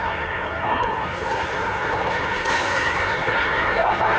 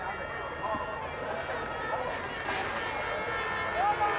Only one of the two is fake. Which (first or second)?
first